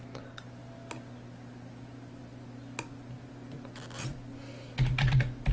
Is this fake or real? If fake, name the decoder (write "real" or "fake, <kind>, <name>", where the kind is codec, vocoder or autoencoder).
real